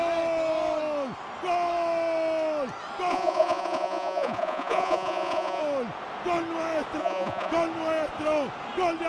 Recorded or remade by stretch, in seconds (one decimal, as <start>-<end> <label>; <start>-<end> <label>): 0.0-3.1 recorded; 3.1-5.6 remade; 5.6-7.0 recorded; 7.0-7.5 remade; 7.5-9.1 recorded